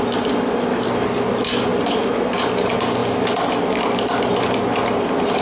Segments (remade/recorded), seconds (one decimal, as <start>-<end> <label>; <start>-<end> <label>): 0.0-5.4 recorded